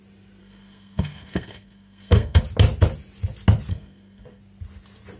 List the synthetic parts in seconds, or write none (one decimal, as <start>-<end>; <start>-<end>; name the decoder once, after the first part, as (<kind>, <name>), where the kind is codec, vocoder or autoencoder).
0.4-2.4 (codec, SNAC); 3.7-4.4